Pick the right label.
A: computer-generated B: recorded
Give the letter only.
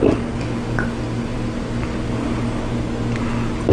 B